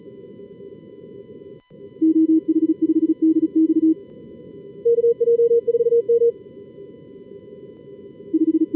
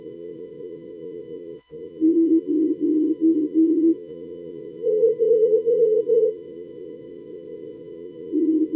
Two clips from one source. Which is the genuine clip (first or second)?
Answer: first